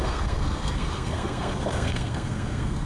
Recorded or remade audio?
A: remade